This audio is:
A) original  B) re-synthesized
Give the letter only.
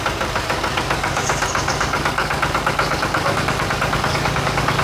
B